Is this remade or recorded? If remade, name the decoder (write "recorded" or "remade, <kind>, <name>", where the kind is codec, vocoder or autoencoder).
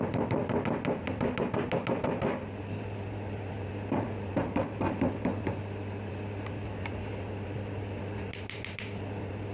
recorded